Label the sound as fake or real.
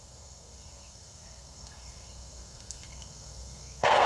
fake